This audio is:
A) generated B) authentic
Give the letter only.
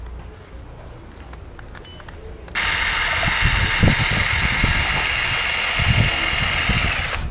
B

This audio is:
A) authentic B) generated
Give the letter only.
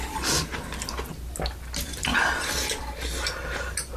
A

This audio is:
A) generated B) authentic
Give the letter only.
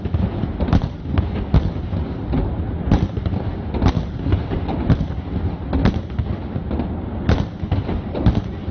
B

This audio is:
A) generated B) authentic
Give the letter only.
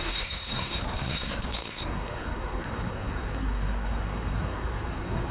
A